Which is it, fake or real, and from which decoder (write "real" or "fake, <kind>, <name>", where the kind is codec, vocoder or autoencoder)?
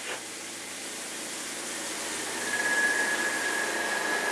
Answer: real